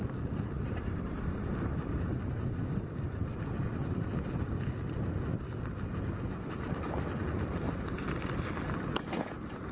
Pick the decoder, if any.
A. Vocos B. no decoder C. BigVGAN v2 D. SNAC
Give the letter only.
B